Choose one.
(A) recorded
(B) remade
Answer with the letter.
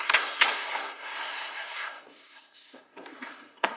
B